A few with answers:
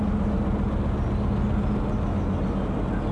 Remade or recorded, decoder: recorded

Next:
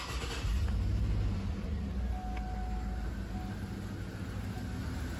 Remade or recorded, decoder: recorded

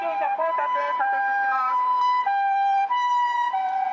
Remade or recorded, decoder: remade, vocoder, BigVGAN v2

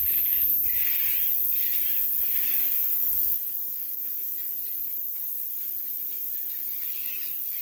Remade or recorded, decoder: recorded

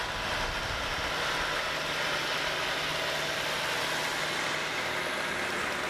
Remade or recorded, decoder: recorded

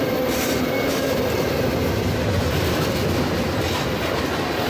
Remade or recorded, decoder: recorded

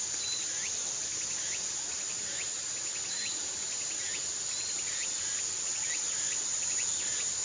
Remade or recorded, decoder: recorded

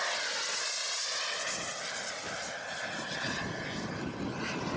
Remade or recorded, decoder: recorded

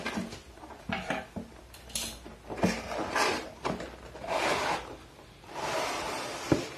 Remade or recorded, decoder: remade, vocoder, BigVGAN v2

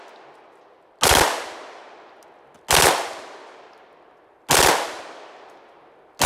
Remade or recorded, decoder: recorded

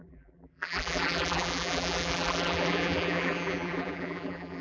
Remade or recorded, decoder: remade, vocoder, BigVGAN v2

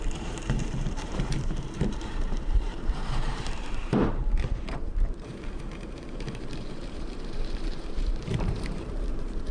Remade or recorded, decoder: remade, vocoder, BigVGAN v2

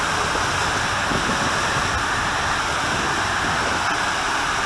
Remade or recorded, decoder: recorded